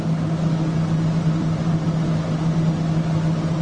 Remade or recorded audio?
recorded